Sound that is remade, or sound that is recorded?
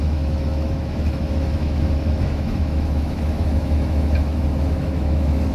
remade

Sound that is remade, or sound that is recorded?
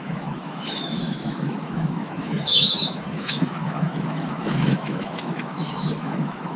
remade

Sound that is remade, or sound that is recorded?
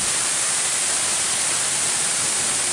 recorded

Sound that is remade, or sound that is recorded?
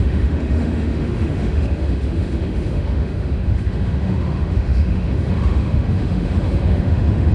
remade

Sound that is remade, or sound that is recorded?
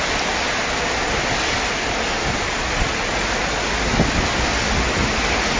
recorded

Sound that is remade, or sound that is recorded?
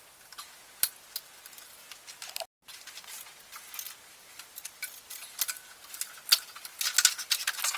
recorded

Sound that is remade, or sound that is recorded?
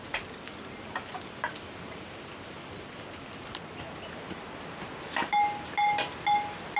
recorded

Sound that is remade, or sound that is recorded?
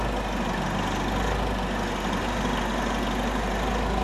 recorded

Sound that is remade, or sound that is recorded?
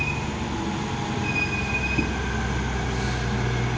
recorded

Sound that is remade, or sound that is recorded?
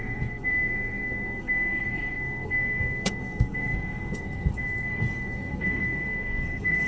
remade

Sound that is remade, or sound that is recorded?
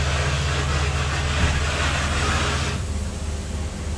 recorded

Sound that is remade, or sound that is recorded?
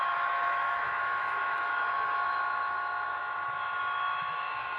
remade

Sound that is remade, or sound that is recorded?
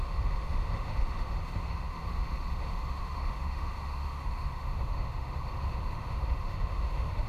remade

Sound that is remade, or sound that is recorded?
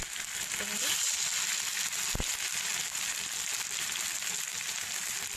recorded